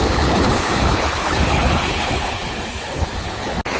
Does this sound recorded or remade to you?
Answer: remade